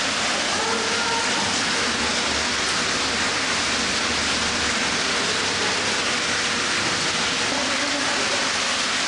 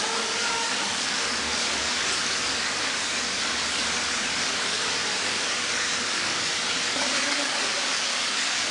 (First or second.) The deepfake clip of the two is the second